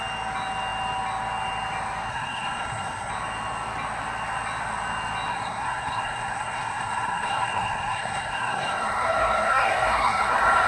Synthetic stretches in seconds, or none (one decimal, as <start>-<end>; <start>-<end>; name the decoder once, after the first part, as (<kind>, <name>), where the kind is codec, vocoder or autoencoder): 2.1-3.1 (codec, SNAC); 5.3-10.7